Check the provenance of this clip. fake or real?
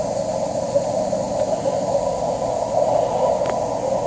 real